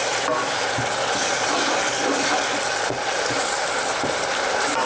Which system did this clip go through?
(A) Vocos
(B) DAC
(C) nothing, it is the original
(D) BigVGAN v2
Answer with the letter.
D